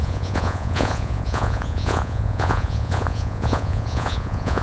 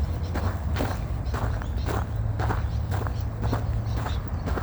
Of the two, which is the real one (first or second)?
second